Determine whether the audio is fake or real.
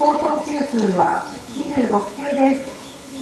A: fake